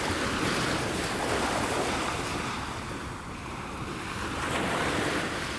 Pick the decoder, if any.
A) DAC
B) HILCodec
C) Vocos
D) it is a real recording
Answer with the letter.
D